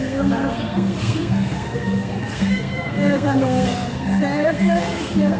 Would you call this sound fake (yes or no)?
yes